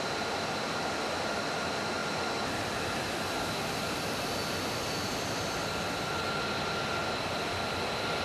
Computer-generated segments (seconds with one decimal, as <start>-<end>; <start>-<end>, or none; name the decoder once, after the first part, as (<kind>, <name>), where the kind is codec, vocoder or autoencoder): none